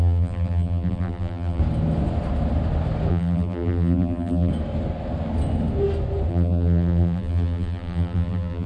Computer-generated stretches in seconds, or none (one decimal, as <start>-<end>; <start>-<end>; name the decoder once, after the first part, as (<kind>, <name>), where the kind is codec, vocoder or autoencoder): 0.0-1.6 (vocoder, BigVGAN v2); 3.1-4.5; 6.3-8.7

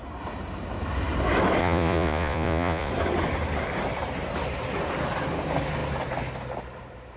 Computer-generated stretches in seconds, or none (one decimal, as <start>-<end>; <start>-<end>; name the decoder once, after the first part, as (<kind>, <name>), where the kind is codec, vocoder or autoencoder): 1.6-2.9 (vocoder, Vocos)